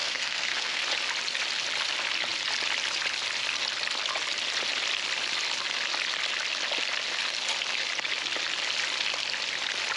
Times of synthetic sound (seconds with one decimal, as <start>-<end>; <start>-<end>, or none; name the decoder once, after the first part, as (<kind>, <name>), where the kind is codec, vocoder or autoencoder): 0.0-0.8 (codec, SNAC)

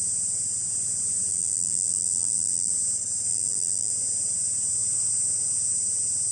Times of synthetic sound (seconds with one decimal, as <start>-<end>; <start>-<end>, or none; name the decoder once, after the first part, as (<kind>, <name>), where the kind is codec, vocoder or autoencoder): 1.3-2.7 (vocoder, BigVGAN v2); 3.3-3.9

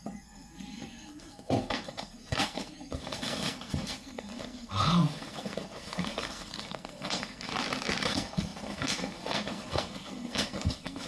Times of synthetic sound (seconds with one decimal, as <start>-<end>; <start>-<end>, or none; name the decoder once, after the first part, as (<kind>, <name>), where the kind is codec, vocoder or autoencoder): 0.0-7.5 (codec, SNAC); 8.0-11.1

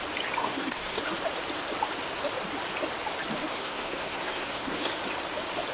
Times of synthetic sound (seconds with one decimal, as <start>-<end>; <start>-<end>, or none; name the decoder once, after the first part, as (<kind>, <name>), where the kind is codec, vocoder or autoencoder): 0.4-1.0 (codec, SNAC); 3.5-4.9

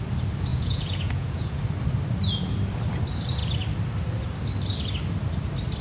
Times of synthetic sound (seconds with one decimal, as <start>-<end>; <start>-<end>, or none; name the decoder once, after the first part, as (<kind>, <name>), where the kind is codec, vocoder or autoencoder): 0.5-1.6 (vocoder, Vocos)

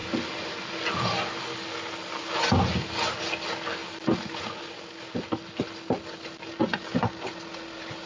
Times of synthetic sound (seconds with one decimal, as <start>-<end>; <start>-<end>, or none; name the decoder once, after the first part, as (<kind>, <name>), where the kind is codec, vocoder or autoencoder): none

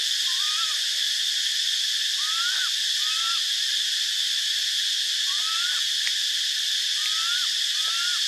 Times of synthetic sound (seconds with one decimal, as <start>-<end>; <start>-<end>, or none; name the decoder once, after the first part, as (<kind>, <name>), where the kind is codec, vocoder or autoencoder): none